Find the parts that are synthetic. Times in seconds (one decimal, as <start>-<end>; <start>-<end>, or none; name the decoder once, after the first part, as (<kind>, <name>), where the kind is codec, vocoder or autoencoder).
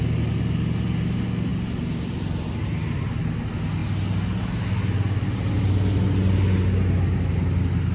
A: none